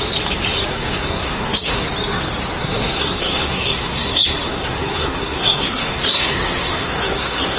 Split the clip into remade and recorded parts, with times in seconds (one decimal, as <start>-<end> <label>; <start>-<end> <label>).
0.0-0.7 recorded; 0.7-1.9 remade; 1.9-2.6 recorded; 2.6-7.6 remade